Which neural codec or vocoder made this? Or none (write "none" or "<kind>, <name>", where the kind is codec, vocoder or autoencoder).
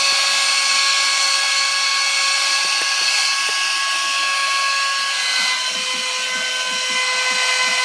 none